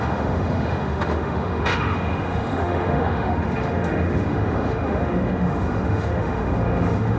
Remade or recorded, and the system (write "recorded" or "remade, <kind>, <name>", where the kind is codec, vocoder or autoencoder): remade, autoencoder, DAC-VAE